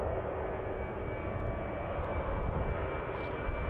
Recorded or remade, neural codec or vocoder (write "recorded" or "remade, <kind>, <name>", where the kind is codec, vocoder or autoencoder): recorded